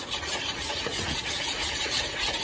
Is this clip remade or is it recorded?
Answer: remade